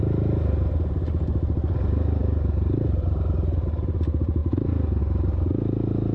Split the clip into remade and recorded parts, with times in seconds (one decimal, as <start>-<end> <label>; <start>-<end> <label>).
0.0-6.1 recorded

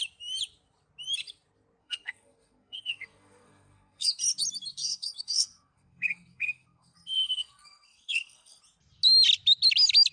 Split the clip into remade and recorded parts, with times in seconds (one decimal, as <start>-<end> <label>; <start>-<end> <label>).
0.0-1.8 recorded; 1.8-4.2 remade; 4.2-4.7 recorded; 4.7-8.6 remade; 8.6-10.1 recorded

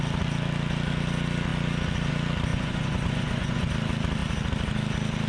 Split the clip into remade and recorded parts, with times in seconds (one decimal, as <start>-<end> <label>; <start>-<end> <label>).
0.0-2.5 recorded; 2.5-3.7 remade; 3.7-5.3 recorded